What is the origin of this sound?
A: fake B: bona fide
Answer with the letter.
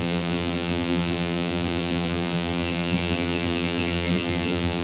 A